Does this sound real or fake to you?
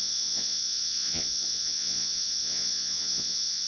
fake